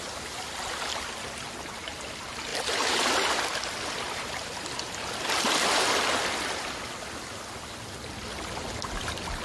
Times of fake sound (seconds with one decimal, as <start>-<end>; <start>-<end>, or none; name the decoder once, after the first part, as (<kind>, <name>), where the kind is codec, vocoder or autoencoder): 2.5-6.4 (vocoder, BigVGAN v2)